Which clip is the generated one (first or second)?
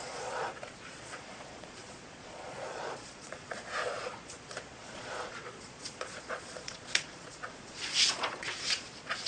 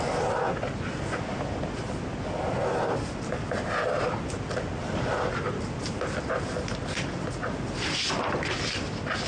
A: first